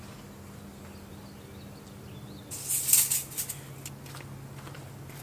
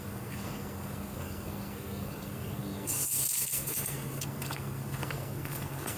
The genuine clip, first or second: first